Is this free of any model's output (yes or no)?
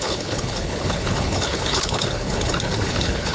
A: no